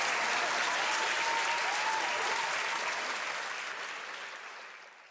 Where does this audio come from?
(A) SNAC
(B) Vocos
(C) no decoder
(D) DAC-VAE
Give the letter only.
C